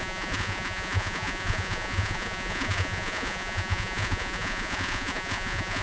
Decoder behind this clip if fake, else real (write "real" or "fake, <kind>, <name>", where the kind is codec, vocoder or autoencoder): fake, vocoder, Vocos